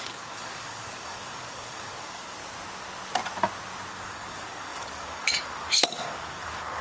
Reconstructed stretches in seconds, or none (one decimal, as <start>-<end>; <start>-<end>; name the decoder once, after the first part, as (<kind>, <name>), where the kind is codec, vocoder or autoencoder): 0.0-2.4 (codec, DAC); 3.9-6.8